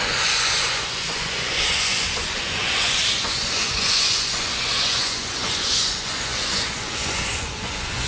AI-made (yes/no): yes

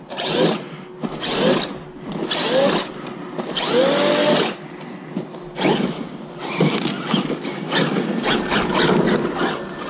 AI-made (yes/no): no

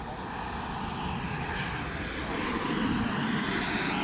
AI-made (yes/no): no